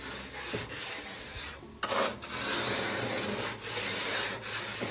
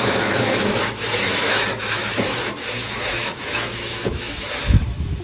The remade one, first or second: second